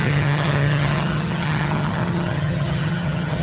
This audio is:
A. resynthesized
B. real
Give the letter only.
A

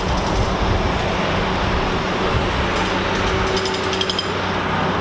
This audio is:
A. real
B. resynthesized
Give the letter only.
A